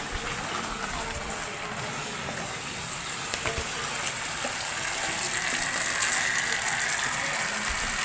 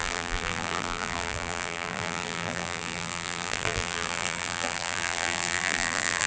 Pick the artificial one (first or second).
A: second